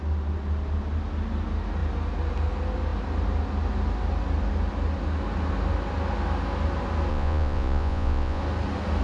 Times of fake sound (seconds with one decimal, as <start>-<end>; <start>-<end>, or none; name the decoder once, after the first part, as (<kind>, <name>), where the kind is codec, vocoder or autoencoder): 7.1-8.4 (vocoder, Vocos)